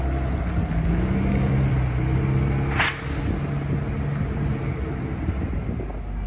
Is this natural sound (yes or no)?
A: yes